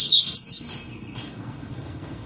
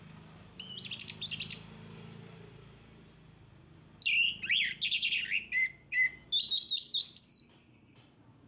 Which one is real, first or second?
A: second